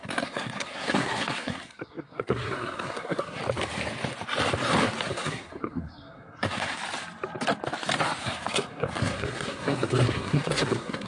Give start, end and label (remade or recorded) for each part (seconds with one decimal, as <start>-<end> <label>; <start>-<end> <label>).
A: 0.0-3.4 remade; 3.4-5.1 recorded; 5.1-6.8 remade; 6.8-8.2 recorded; 8.2-11.1 remade